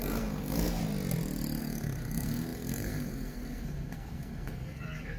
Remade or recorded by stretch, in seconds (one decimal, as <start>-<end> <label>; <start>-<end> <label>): 0.0-0.8 remade; 0.8-1.6 recorded; 1.6-5.2 remade

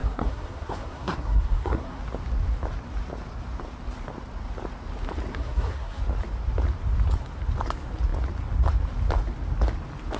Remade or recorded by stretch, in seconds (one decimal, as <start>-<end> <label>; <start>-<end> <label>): 0.0-2.0 remade; 2.0-5.3 recorded; 5.3-6.0 remade; 6.0-10.2 recorded

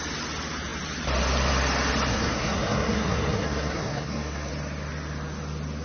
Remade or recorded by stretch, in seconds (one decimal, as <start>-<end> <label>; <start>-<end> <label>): 0.0-2.1 recorded; 2.1-4.5 remade; 4.5-5.8 recorded

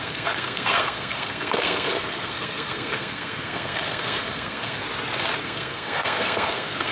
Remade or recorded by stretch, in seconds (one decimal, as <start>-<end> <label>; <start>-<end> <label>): 0.0-4.8 remade; 4.8-5.4 recorded; 5.4-6.9 remade

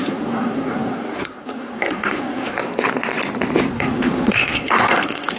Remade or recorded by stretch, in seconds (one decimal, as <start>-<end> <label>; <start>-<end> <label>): 0.0-2.6 remade; 2.6-3.7 recorded; 3.7-5.4 remade

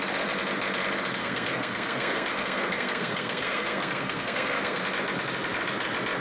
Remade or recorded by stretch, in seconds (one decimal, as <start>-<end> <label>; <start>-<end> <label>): 0.0-1.2 recorded; 1.2-4.8 remade; 4.8-6.2 recorded

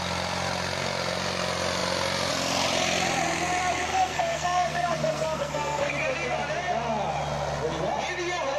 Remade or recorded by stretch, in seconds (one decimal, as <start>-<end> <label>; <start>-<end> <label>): 0.0-3.9 recorded; 3.9-5.9 remade; 5.9-8.6 recorded

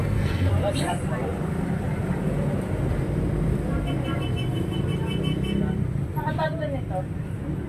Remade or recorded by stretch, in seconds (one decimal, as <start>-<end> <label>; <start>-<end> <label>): 0.0-0.5 remade; 0.5-7.7 recorded